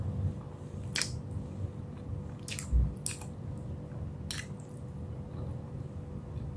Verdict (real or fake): real